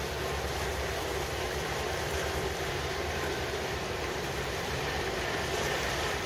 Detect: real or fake fake